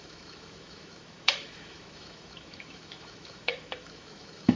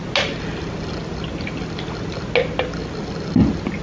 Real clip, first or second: second